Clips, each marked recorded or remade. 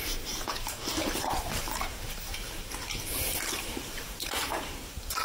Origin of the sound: remade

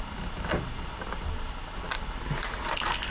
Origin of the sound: recorded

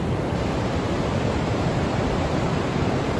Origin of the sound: recorded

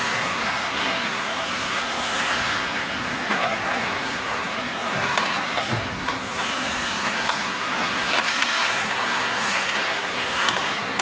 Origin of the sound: remade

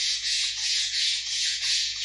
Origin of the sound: remade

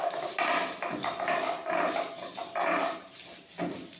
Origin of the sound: recorded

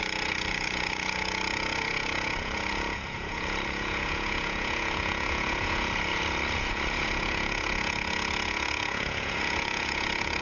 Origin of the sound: remade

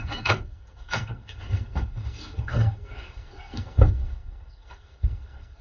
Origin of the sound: remade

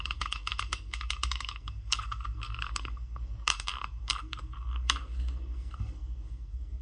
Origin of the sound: remade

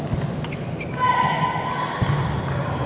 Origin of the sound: recorded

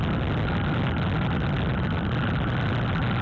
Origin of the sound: recorded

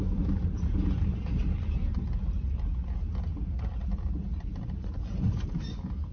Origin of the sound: recorded